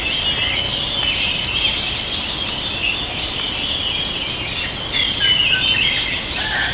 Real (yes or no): yes